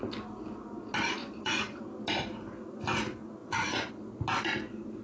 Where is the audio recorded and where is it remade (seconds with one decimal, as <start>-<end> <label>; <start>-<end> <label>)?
0.0-1.2 recorded; 1.2-1.8 remade; 1.8-3.4 recorded; 3.4-3.9 remade; 3.9-5.0 recorded